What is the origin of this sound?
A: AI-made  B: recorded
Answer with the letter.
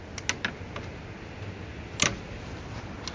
B